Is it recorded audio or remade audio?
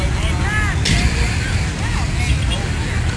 recorded